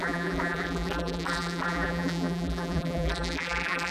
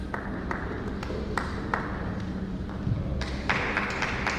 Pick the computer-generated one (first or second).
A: first